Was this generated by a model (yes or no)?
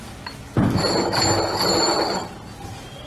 no